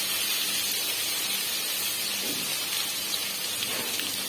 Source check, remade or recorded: recorded